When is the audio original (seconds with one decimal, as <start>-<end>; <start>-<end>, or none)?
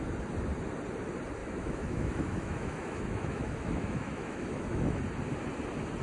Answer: 0.0-1.4; 5.0-6.0